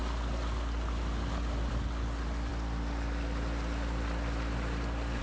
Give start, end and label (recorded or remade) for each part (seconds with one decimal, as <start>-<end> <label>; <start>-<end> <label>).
0.0-5.2 recorded